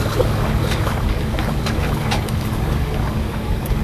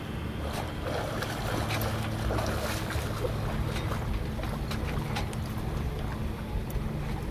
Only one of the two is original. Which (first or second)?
second